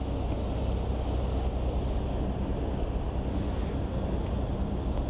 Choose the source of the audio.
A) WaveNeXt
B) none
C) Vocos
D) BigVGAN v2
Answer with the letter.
B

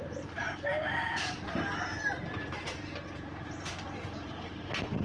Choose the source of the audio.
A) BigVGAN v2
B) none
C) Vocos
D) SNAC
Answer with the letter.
A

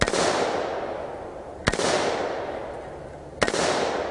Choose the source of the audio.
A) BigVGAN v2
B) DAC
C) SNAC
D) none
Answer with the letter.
D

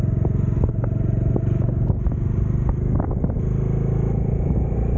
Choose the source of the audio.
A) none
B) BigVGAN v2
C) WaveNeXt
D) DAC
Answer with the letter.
A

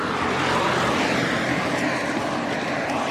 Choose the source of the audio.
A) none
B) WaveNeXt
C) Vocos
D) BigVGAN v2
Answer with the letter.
A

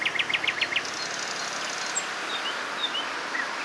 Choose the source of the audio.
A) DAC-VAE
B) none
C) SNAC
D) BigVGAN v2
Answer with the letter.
B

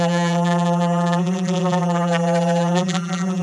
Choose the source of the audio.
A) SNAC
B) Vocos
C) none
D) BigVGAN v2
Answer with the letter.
D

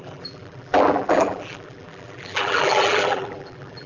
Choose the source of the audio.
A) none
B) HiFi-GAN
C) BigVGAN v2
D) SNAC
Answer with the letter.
C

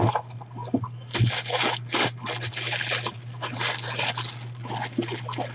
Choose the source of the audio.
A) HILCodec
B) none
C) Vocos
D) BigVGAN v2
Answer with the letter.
B